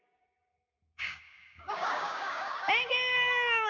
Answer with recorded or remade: remade